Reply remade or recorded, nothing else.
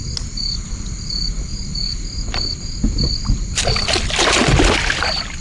recorded